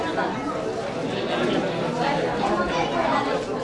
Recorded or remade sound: recorded